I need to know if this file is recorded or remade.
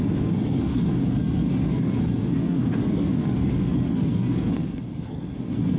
remade